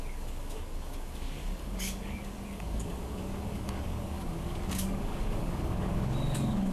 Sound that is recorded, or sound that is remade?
remade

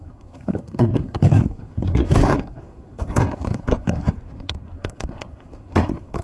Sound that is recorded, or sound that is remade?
remade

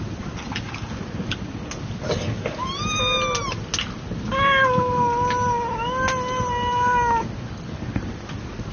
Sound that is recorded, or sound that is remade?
recorded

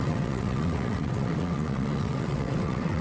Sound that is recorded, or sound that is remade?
remade